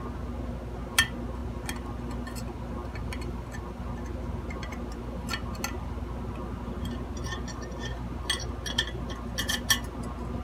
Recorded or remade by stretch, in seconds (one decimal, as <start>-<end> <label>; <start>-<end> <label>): 0.0-10.4 recorded